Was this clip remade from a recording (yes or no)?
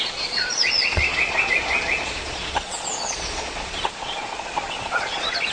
yes